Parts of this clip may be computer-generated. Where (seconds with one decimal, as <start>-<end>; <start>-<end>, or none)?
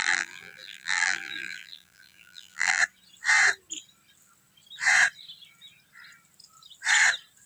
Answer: 0.0-2.8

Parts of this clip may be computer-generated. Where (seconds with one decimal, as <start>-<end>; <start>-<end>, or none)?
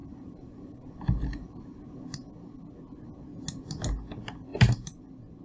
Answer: 0.0-1.6; 4.5-5.0